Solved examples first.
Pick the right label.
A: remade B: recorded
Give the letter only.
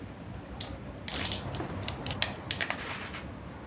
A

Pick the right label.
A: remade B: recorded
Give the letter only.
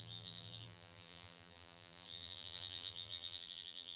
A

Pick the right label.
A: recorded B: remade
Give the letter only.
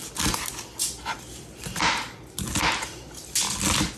B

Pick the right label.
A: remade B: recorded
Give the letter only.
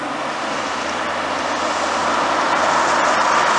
B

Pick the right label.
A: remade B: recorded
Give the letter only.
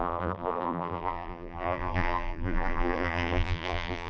A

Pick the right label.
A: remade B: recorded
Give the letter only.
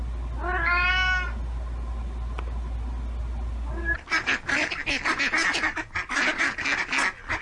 B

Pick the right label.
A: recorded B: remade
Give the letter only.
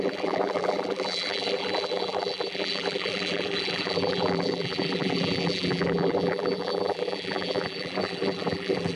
B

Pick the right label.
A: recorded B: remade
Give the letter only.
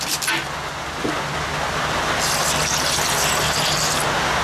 A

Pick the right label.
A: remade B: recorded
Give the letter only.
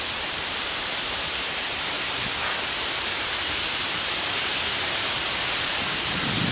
A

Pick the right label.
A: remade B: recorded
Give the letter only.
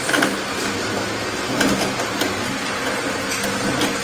B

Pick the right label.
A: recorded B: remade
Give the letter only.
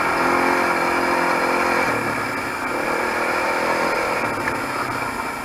A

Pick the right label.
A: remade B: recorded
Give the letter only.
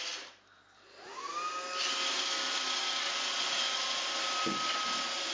B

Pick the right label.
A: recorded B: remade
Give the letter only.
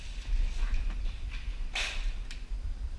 A